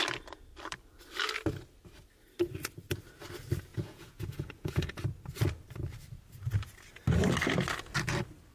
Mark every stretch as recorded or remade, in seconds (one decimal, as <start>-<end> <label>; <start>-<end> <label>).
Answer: 0.0-3.7 recorded; 3.7-5.0 remade; 5.0-8.5 recorded